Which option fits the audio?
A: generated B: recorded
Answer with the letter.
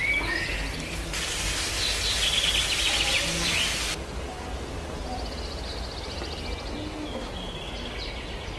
B